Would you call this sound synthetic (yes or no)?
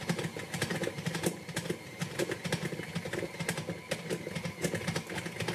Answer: no